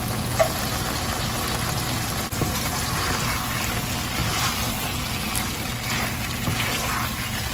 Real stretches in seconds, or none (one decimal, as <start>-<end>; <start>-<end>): 0.0-7.5

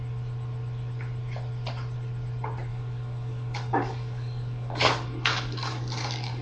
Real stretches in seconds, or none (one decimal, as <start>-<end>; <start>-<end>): 0.0-2.7

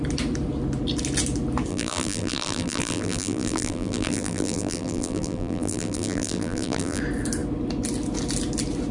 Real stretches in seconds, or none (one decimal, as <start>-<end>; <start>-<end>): 0.0-1.7; 7.0-8.9